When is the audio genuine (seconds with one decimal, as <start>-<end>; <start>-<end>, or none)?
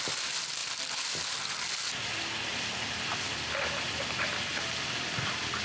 0.0-5.6